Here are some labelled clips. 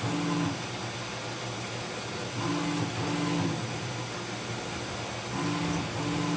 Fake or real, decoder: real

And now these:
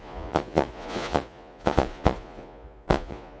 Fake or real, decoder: fake, vocoder, Vocos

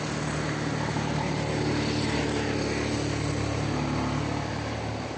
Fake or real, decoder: real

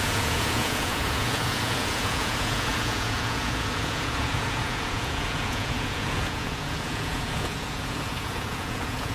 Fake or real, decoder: fake, vocoder, Vocos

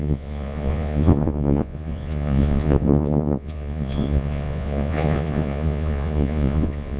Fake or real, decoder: fake, vocoder, Vocos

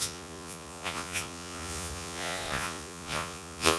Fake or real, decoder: fake, vocoder, Vocos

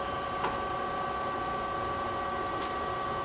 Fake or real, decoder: real